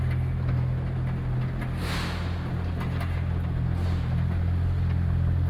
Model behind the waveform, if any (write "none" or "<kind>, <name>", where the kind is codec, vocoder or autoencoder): none